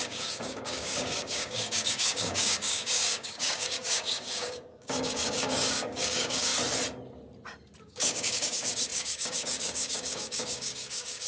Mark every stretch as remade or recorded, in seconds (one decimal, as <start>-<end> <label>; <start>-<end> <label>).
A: 0.0-6.5 remade; 6.5-7.8 recorded; 7.8-11.3 remade